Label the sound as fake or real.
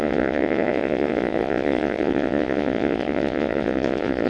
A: fake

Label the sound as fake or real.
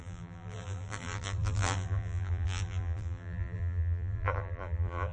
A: fake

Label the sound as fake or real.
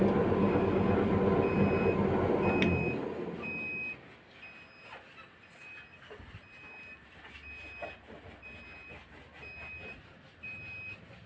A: real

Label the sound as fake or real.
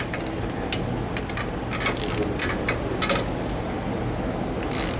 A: real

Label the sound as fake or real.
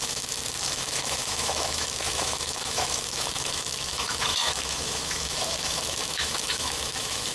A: fake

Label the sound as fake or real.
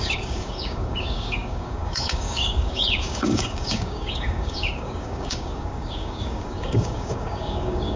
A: fake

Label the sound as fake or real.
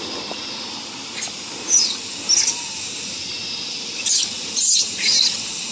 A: real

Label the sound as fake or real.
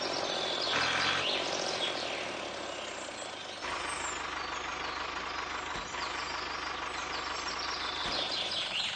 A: real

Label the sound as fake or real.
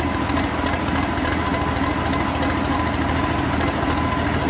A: real